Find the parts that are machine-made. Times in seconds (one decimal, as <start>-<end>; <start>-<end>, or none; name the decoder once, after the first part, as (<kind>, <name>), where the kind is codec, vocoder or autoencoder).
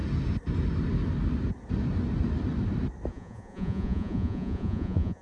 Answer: 3.1-5.2 (vocoder, Vocos)